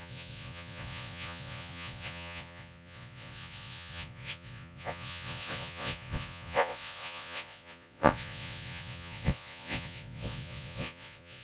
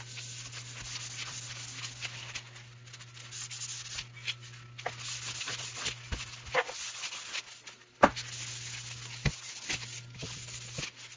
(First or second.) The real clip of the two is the second